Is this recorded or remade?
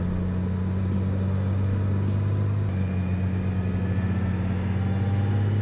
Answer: recorded